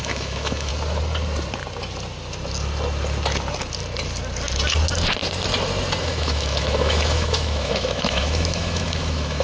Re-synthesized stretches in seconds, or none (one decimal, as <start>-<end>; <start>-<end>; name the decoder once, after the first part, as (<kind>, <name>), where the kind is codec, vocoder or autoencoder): 0.0-0.7 (autoencoder, DAC-VAE); 6.0-9.4